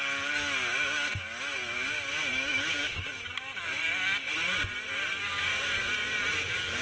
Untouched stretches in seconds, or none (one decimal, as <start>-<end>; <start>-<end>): 0.0-2.3; 3.1-5.2; 5.8-6.8